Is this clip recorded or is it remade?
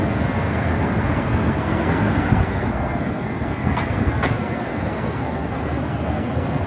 remade